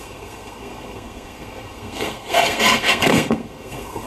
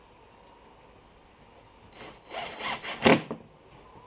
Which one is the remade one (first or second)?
first